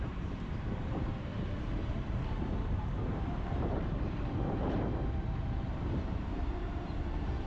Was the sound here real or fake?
fake